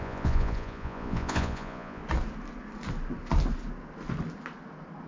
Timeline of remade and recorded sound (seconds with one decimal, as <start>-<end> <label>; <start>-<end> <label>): 0.0-2.0 remade; 2.0-5.1 recorded